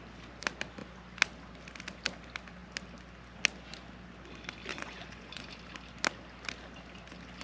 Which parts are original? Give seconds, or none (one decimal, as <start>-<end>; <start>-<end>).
0.0-4.7; 5.5-7.4